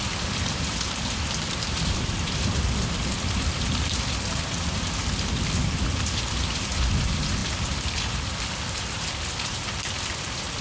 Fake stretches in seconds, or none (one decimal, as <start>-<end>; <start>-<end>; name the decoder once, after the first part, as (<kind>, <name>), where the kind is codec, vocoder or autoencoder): 0.0-10.6 (vocoder, BigVGAN v2)